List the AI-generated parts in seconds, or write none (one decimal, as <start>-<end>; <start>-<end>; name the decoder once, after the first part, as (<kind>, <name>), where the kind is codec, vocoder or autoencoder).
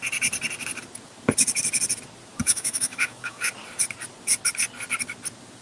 2.4-3.5 (autoencoder, DAC-VAE)